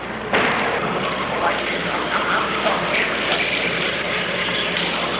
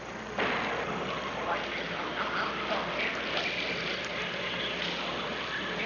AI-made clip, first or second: first